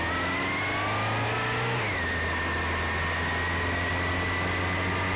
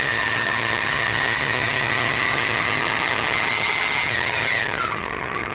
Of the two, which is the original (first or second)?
first